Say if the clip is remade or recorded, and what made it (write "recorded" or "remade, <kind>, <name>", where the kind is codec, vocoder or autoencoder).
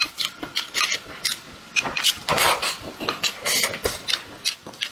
remade, vocoder, BigVGAN v2